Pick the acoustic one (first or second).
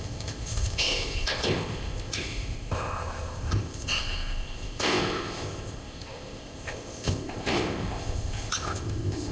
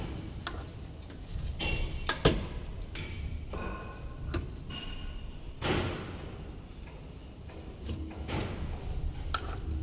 second